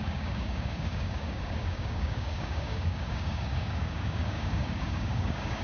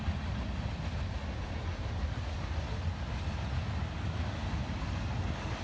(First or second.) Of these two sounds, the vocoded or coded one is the first